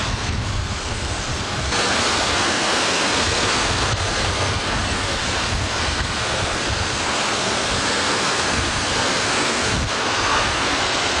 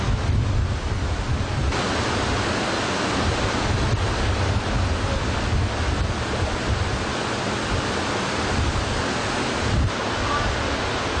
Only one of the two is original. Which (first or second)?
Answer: second